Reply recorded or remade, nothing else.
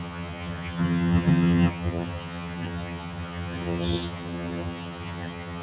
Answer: remade